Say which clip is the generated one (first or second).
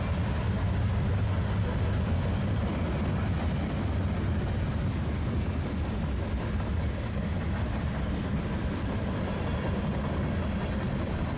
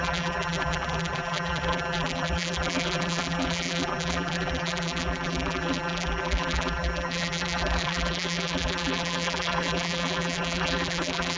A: second